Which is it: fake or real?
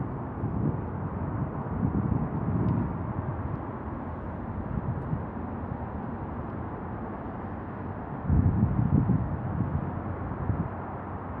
real